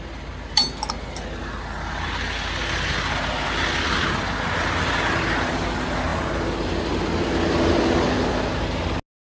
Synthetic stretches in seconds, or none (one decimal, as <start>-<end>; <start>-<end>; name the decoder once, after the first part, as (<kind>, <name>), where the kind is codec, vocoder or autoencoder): none